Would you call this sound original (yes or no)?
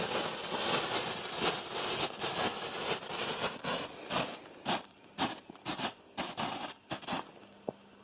yes